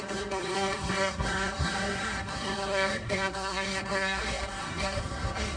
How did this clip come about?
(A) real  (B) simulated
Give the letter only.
B